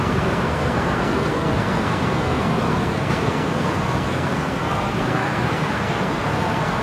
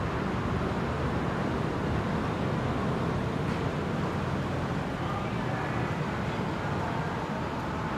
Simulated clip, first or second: first